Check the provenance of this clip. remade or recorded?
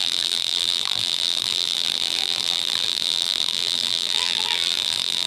remade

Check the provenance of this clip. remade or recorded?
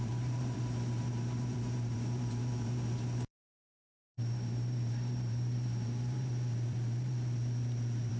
remade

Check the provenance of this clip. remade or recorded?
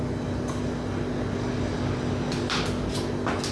recorded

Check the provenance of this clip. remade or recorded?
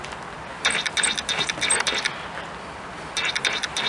recorded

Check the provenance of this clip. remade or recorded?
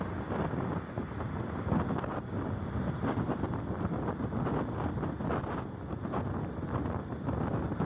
recorded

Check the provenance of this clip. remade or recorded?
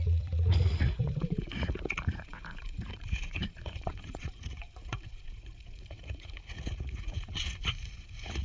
remade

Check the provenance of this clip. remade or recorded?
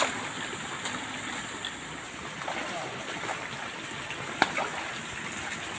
recorded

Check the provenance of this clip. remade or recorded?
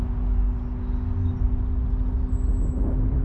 recorded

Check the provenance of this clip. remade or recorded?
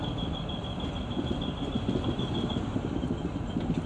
recorded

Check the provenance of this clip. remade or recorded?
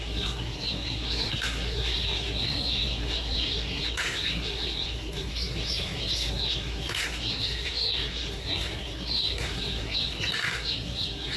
remade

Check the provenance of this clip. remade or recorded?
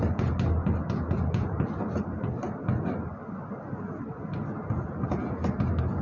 recorded